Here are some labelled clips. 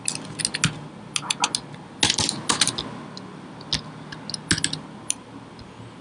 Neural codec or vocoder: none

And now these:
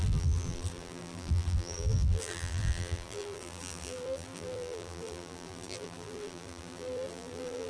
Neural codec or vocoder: vocoder, BigVGAN v2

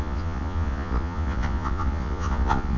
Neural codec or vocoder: vocoder, Vocos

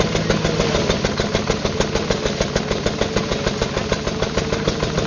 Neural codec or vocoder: none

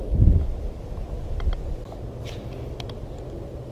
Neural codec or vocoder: none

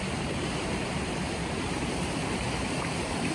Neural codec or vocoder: vocoder, BigVGAN v2